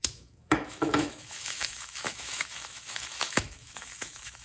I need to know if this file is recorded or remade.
remade